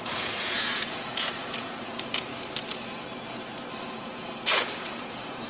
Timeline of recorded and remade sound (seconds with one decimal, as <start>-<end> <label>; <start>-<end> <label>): 0.0-2.3 remade; 2.3-3.8 recorded; 3.8-5.5 remade